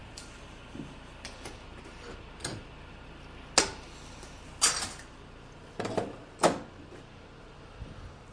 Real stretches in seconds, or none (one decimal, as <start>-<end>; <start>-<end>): 0.0-8.3